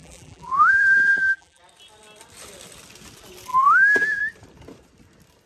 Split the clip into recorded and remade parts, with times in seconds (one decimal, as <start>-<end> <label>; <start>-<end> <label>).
0.0-1.6 remade; 1.6-3.5 recorded; 3.5-4.2 remade; 4.2-5.5 recorded

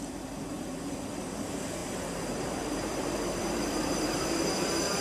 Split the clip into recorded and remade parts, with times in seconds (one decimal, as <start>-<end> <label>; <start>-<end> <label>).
0.0-1.8 recorded; 1.8-5.0 remade